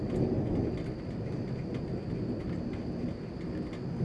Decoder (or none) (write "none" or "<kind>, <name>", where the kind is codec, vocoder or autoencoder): none